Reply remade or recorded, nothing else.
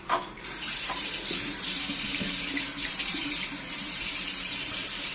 remade